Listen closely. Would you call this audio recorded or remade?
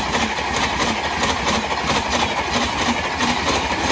recorded